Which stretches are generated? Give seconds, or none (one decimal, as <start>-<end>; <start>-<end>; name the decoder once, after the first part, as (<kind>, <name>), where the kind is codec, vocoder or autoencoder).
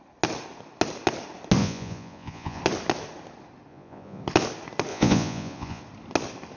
1.6-2.6 (vocoder, Vocos); 3.7-4.2; 4.9-5.8